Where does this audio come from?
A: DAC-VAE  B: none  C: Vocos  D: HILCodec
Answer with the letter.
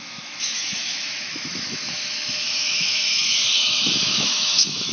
A